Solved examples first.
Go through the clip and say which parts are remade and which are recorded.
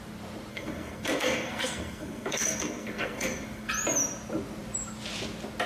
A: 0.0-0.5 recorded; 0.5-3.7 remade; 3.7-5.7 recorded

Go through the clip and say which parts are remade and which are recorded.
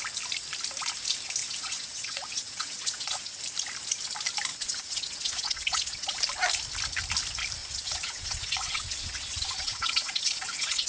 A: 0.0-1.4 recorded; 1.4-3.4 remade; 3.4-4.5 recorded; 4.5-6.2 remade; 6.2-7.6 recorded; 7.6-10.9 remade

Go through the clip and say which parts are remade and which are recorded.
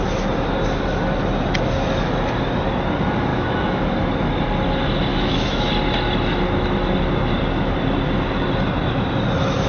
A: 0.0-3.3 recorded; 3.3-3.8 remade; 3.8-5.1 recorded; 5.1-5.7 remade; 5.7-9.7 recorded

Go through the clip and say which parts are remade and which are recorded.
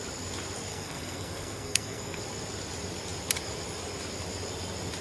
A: 0.0-0.7 recorded; 0.7-2.2 remade; 2.2-5.0 recorded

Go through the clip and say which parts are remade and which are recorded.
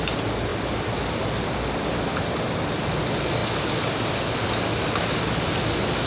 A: 0.0-6.1 recorded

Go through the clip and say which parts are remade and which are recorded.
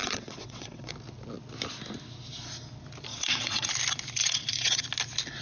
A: 0.0-0.9 remade; 0.9-3.1 recorded; 3.1-3.7 remade; 3.7-4.2 recorded; 4.2-4.8 remade; 4.8-5.4 recorded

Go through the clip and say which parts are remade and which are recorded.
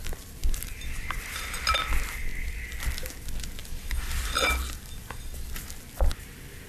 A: 0.0-0.4 recorded; 0.4-1.5 remade; 1.5-3.6 recorded; 3.6-5.5 remade; 5.5-6.7 recorded